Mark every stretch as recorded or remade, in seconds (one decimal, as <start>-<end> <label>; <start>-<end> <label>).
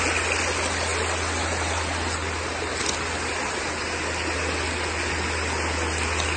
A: 0.0-6.4 recorded